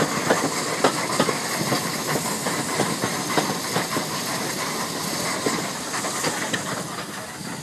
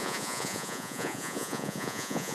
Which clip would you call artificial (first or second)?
second